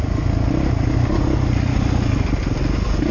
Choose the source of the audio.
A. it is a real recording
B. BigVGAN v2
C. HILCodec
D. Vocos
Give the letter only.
A